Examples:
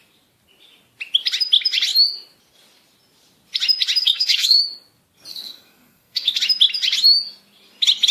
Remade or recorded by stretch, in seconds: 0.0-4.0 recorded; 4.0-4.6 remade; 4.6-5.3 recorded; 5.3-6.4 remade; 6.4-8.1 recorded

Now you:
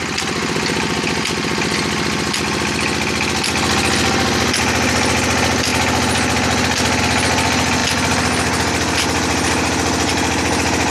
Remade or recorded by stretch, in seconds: 0.0-10.9 recorded

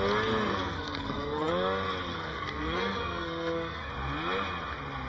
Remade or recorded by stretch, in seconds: 0.0-0.5 recorded; 0.5-1.5 remade; 1.5-2.1 recorded; 2.1-3.9 remade; 3.9-5.1 recorded

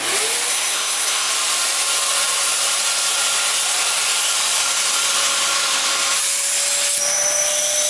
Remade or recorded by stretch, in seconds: 0.0-0.5 recorded; 0.5-1.3 remade; 1.3-7.9 recorded

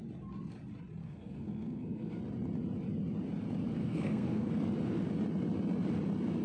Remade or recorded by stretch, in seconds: 0.0-1.0 recorded; 1.0-2.2 remade; 2.2-3.8 recorded; 3.8-4.5 remade; 4.5-6.4 recorded

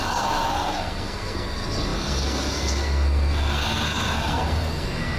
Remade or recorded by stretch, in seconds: 0.0-5.2 remade

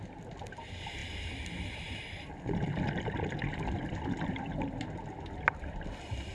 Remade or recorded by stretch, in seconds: 0.0-6.3 recorded

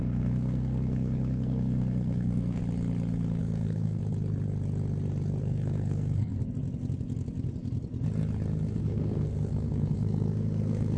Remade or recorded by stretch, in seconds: 0.0-2.6 remade; 2.6-3.4 recorded; 3.4-4.0 remade; 4.0-5.4 recorded; 5.4-6.4 remade; 6.4-8.8 recorded; 8.8-11.0 remade